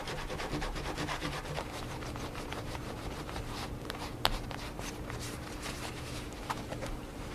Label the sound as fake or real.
fake